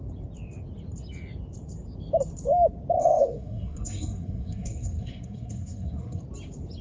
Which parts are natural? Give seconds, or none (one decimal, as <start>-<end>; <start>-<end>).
0.0-3.0; 6.2-6.8